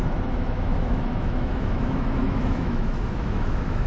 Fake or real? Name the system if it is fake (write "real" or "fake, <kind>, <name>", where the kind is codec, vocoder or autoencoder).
fake, autoencoder, DAC-VAE